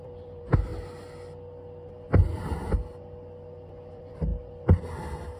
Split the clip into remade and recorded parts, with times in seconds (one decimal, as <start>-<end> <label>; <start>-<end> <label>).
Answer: 0.0-0.7 remade; 0.7-3.9 recorded; 3.9-5.4 remade